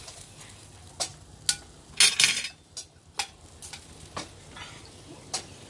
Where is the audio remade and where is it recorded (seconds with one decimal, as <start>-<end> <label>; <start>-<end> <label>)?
0.0-5.7 recorded